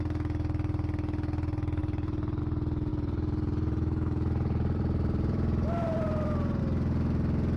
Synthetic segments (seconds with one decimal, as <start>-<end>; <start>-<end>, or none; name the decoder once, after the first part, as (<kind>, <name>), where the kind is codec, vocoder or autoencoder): 1.8-2.4 (vocoder, BigVGAN v2); 2.9-6.6